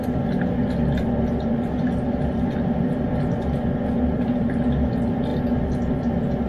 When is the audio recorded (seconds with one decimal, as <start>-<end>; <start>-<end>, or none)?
0.0-6.5